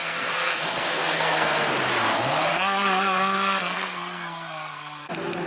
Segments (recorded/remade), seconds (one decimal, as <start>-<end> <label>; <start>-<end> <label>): 0.0-1.7 remade; 1.7-2.5 recorded; 2.5-5.1 remade; 5.1-5.5 recorded